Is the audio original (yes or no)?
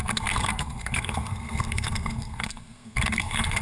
no